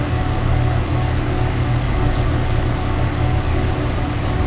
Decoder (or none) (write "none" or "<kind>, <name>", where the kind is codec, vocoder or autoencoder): codec, DAC